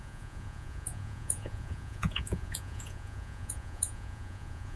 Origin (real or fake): fake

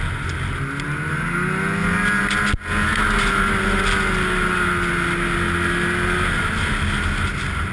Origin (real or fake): real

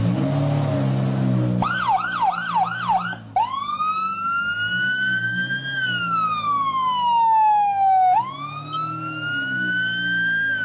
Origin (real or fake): real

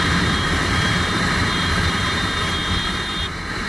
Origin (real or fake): fake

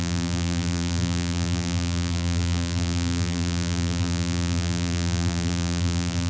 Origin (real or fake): fake